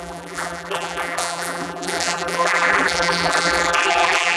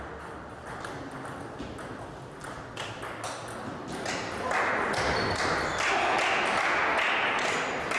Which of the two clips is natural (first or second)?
second